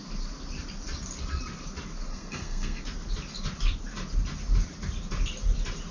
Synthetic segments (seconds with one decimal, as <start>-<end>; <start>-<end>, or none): 2.1-2.8